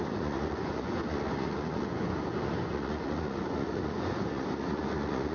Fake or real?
fake